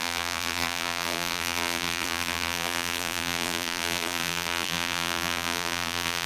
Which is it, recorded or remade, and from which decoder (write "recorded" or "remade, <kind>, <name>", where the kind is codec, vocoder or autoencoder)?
remade, vocoder, BigVGAN v2